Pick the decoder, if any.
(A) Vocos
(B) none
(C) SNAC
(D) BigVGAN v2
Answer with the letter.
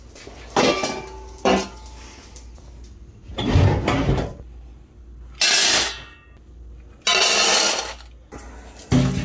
B